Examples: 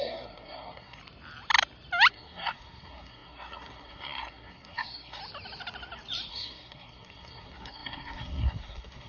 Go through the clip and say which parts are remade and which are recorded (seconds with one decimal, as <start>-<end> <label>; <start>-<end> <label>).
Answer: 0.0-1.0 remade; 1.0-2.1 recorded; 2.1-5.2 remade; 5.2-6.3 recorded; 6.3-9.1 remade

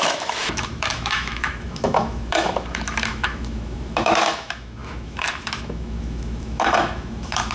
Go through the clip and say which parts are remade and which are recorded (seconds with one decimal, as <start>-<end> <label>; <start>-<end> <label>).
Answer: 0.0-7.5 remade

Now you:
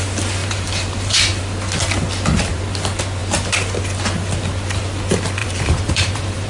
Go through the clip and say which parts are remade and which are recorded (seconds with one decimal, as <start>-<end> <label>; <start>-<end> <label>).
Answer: 0.0-0.4 recorded; 0.4-1.4 remade; 1.4-5.4 recorded; 5.4-6.5 remade

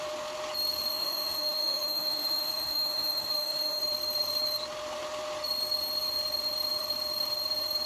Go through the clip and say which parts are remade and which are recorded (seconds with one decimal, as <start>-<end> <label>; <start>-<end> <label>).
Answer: 0.0-0.9 recorded; 0.9-3.8 remade; 3.8-7.9 recorded

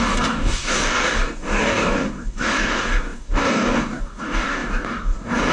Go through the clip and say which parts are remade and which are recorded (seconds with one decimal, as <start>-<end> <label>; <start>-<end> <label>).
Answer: 0.0-5.5 remade

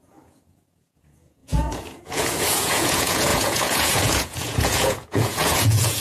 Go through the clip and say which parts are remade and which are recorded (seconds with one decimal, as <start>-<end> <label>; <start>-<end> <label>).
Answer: 0.0-6.0 remade

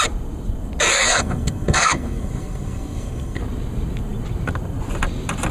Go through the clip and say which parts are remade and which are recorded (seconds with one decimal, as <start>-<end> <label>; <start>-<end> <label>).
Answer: 0.0-0.9 recorded; 0.9-3.4 remade; 3.4-5.5 recorded

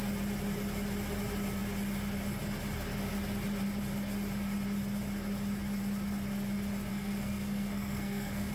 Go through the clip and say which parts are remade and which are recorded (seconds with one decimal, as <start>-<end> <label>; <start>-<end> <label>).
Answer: 0.0-6.9 recorded; 6.9-8.5 remade